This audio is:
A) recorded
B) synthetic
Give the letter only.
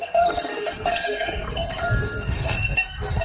B